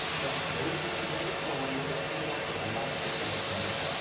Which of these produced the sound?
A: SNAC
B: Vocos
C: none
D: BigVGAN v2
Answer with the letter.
C